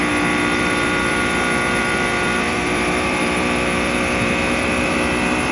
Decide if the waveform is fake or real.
fake